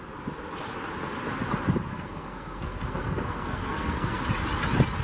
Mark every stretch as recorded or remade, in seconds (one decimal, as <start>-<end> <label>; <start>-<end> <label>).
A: 0.0-1.9 recorded; 1.9-4.2 remade; 4.2-5.0 recorded